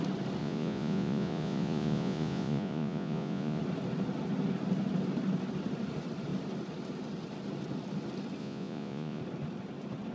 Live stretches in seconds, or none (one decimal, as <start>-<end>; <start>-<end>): 0.0-0.4; 3.6-8.4; 9.2-10.1